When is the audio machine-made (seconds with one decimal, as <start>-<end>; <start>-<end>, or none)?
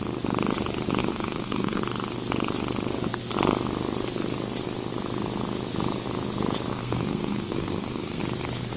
1.0-1.8; 6.7-8.2